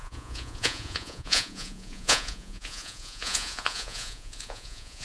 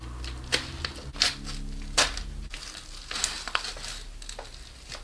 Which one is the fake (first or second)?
first